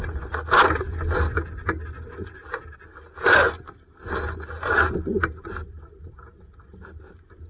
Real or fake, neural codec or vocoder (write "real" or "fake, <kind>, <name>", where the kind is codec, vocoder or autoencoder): real